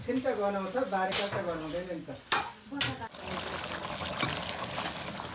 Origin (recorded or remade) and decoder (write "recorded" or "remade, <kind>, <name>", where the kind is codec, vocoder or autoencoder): recorded